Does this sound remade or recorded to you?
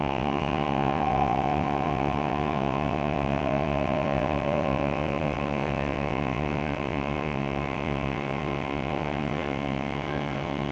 remade